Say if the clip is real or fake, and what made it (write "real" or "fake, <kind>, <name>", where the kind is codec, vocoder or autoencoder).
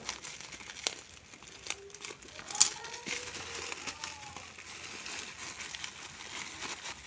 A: real